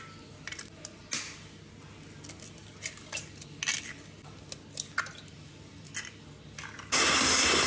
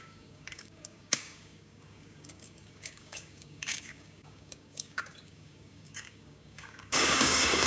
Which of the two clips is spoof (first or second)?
second